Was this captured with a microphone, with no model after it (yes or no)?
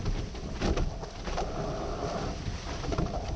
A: yes